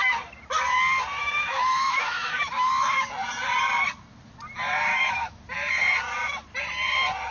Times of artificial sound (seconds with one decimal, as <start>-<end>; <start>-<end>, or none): 1.2-2.7; 4.9-5.4

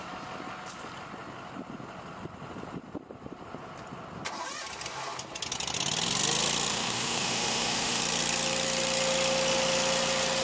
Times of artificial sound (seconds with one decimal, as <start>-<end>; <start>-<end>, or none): 6.7-8.0

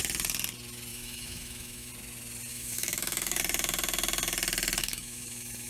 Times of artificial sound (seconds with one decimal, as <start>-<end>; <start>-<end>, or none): 0.9-1.9; 2.5-3.4; 4.8-5.7

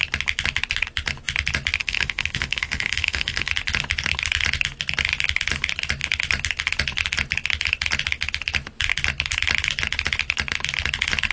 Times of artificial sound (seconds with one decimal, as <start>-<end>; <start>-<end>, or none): 1.8-3.5

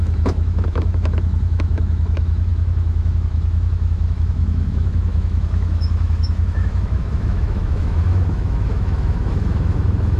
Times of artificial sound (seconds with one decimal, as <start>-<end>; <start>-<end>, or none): 0.0-10.2